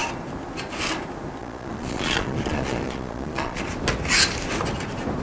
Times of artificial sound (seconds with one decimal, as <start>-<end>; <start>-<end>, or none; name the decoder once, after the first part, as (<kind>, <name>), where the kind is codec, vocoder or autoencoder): 1.4-3.6 (vocoder, Vocos)